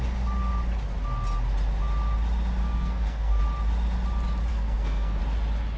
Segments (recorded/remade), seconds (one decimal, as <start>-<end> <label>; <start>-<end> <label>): 0.0-2.6 recorded; 2.6-3.4 remade; 3.4-4.5 recorded; 4.5-5.2 remade; 5.2-5.8 recorded